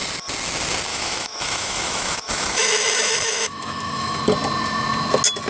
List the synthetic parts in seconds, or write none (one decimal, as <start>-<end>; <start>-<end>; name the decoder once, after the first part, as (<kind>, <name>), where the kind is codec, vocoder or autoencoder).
0.9-4.2 (autoencoder, DAC-VAE)